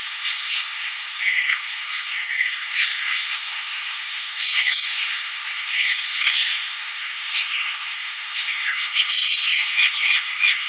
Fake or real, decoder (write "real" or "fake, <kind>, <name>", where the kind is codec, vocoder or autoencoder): fake, codec, SNAC